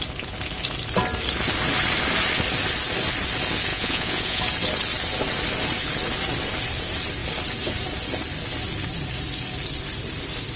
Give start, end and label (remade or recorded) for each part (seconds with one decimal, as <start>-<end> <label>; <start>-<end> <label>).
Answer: 0.0-3.7 recorded; 3.7-4.4 remade; 4.4-10.6 recorded